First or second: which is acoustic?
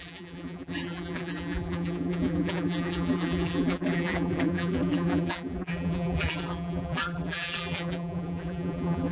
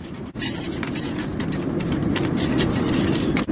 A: second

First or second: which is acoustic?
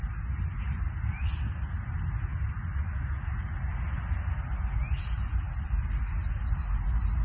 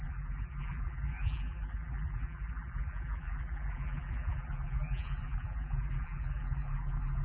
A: first